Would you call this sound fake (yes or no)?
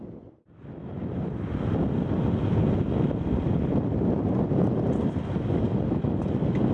no